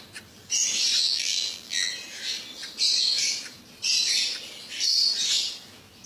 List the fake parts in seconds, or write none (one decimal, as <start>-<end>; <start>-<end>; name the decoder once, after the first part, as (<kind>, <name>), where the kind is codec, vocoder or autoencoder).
1.0-1.9 (vocoder, BigVGAN v2)